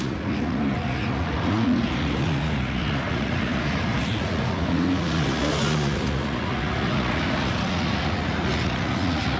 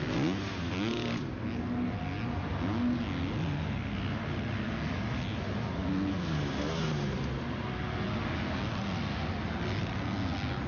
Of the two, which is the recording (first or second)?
second